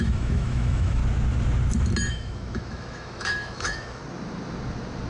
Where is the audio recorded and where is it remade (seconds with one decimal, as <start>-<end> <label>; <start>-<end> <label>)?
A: 0.0-1.0 remade; 1.0-2.1 recorded; 2.1-4.0 remade; 4.0-5.1 recorded